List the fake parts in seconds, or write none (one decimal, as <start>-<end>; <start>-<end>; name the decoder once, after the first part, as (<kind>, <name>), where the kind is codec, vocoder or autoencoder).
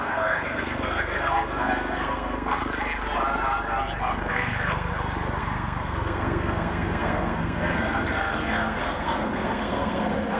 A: 0.0-2.6 (codec, SNAC); 4.3-4.9; 5.4-10.4